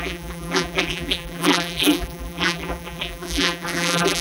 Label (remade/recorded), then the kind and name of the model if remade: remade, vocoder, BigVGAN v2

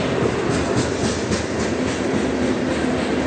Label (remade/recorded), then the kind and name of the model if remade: recorded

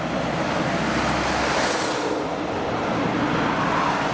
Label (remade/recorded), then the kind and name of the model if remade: recorded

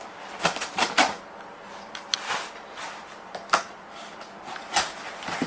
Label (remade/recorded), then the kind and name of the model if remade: remade, vocoder, BigVGAN v2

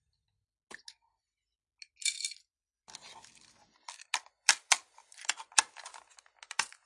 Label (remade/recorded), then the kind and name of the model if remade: recorded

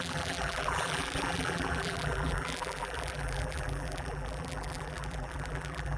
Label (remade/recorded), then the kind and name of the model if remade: remade, vocoder, BigVGAN v2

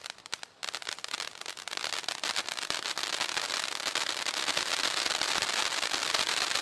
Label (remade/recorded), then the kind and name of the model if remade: remade, vocoder, BigVGAN v2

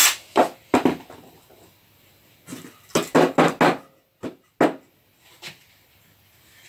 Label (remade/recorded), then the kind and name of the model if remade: recorded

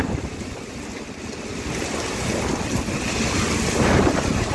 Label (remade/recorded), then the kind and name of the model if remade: recorded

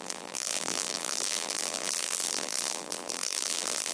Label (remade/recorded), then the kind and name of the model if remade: remade, vocoder, BigVGAN v2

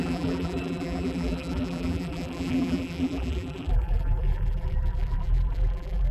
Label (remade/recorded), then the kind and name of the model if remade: remade, vocoder, BigVGAN v2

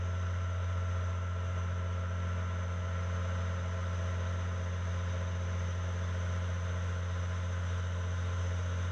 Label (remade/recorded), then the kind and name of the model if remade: recorded